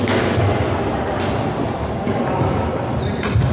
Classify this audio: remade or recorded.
recorded